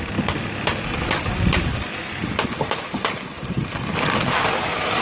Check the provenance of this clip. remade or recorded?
recorded